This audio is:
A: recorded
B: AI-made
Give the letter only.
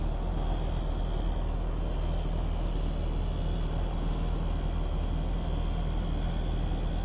A